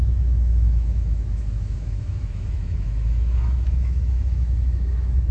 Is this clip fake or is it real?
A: fake